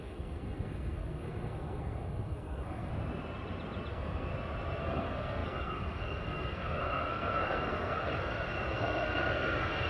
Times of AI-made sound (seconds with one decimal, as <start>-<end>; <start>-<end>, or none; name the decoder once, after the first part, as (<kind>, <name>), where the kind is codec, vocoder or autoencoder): 0.0-2.9 (codec, SNAC); 3.9-4.3; 4.8-9.9